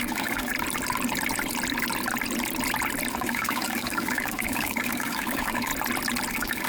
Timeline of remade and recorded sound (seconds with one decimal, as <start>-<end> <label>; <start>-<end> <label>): 0.0-0.5 remade; 0.5-3.1 recorded; 3.1-5.7 remade; 5.7-6.3 recorded; 6.3-6.7 remade